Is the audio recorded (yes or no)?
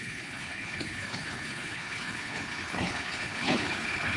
no